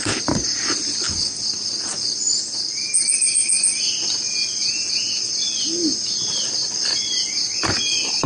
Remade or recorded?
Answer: recorded